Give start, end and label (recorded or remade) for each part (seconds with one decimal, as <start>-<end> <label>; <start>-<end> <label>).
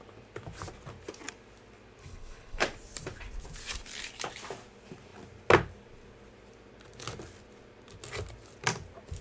0.0-2.0 recorded; 2.0-2.6 remade; 2.6-9.2 recorded